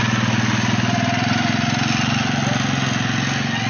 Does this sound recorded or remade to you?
recorded